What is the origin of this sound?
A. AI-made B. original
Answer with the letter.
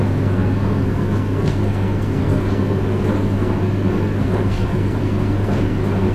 A